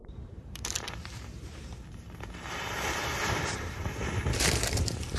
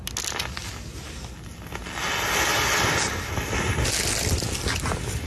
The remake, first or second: first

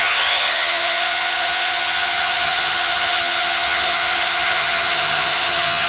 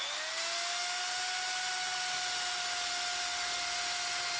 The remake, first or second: first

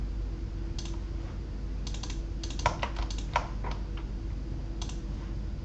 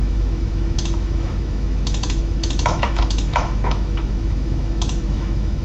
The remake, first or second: second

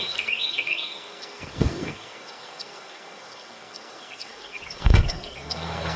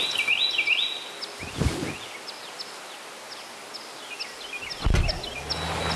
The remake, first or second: first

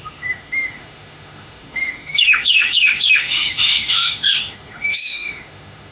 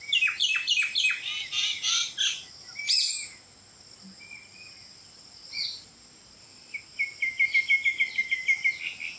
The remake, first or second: first